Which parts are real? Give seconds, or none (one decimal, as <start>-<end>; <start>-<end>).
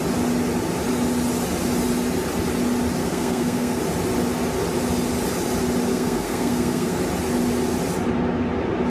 0.0-3.0; 3.8-5.9; 7.0-8.9